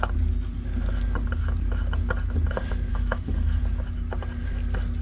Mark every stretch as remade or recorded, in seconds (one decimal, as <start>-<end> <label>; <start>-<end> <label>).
0.0-2.9 recorded; 2.9-3.6 remade; 3.6-5.0 recorded